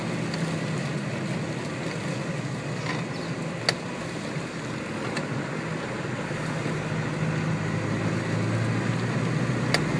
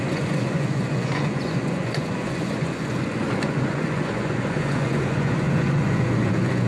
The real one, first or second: first